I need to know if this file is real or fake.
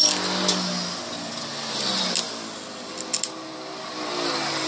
real